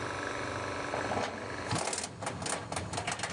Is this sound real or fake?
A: real